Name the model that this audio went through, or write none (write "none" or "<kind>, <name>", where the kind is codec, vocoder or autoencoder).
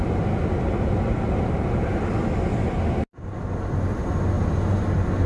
none